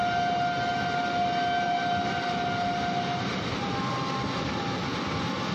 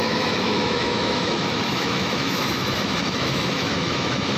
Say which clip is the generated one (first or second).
second